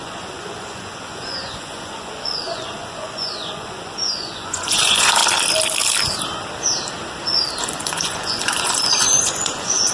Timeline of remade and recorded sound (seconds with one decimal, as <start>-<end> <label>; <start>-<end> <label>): 0.0-5.2 remade; 5.2-7.6 recorded; 7.6-9.9 remade

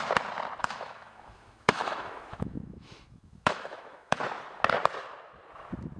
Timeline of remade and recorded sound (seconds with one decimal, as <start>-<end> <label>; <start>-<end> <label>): 0.0-0.6 recorded; 0.6-4.2 remade; 4.2-6.0 recorded